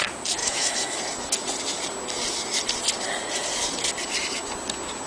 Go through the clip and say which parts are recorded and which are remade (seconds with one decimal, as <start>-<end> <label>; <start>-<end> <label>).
0.0-0.4 recorded; 0.4-1.0 remade; 1.0-5.1 recorded